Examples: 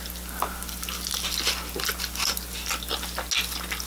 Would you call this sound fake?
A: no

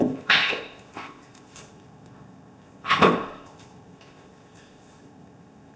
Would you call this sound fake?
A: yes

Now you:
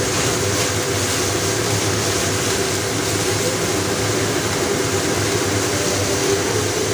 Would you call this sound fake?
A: no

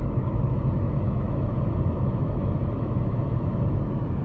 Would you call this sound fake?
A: yes